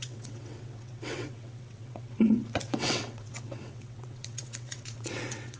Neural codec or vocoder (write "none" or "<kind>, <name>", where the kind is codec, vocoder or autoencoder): vocoder, WaveNeXt